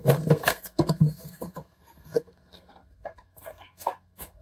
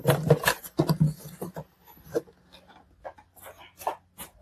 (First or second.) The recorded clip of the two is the second